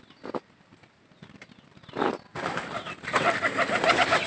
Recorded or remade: remade